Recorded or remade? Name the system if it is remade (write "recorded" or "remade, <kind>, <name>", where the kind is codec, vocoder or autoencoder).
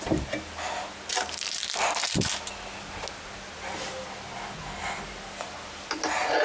recorded